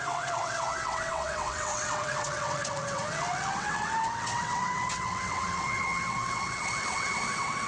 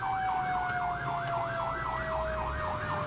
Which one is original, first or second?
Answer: second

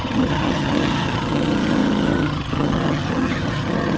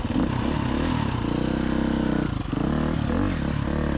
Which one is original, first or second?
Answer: second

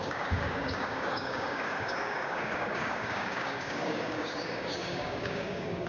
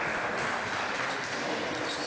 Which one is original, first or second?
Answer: second